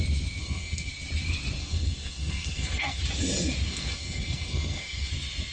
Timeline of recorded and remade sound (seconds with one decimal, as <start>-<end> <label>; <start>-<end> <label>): 0.0-0.4 recorded; 0.4-0.9 remade; 0.9-1.6 recorded; 1.6-3.0 remade; 3.0-3.7 recorded; 3.7-5.1 remade; 5.1-5.5 recorded